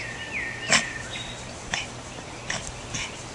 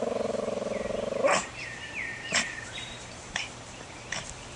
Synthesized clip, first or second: second